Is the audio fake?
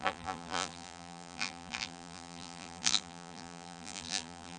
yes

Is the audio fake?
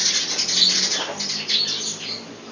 no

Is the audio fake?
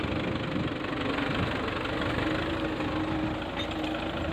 no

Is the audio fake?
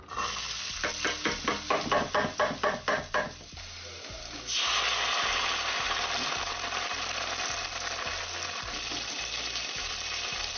no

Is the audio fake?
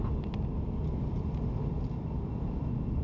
no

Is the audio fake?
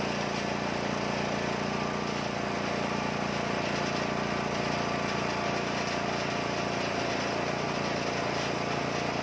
no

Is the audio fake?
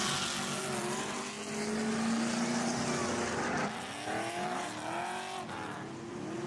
no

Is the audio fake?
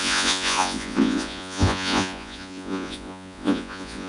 yes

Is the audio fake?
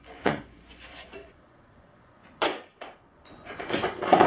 yes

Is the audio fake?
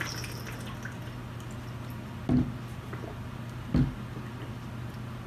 no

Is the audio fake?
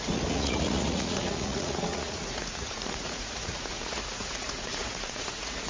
yes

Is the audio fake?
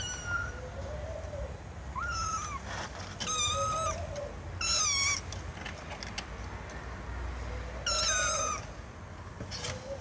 no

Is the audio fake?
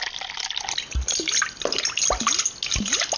no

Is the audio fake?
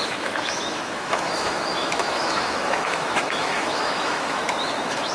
yes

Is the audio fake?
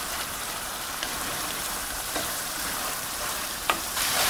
yes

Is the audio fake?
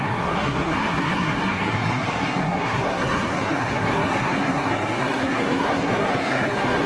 yes